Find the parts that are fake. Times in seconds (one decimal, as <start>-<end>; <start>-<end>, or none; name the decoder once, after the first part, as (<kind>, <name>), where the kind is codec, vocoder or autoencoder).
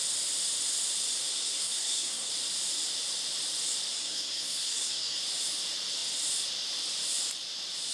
1.3-2.3 (codec, SNAC); 3.9-5.2